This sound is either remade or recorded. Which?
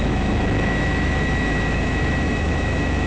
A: remade